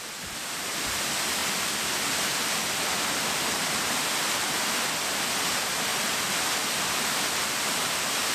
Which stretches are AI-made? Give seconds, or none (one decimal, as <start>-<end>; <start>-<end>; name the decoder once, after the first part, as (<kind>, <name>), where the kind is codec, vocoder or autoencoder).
none